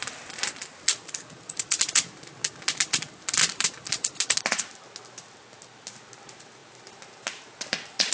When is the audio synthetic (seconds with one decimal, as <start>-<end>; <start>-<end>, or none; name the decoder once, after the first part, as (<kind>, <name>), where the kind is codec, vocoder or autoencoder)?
none